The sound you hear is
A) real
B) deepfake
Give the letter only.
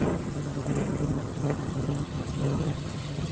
B